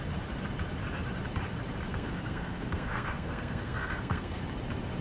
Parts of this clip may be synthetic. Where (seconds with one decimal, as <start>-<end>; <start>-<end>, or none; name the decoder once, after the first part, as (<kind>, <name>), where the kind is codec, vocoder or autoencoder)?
1.9-4.4 (codec, SNAC)